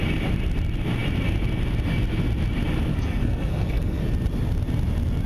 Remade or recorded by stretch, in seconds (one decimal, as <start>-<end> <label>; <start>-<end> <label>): 0.0-2.9 recorded; 2.9-4.0 remade; 4.0-5.3 recorded

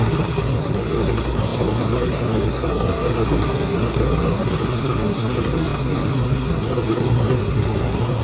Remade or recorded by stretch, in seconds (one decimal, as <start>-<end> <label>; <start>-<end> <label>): 0.0-8.2 remade

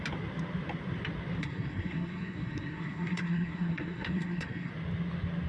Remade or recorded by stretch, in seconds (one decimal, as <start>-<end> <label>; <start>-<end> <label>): 0.0-1.4 recorded; 1.4-4.7 remade; 4.7-5.5 recorded

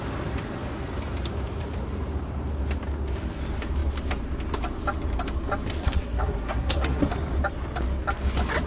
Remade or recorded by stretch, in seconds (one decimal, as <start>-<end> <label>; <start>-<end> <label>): 0.0-5.8 recorded; 5.8-7.0 remade; 7.0-8.7 recorded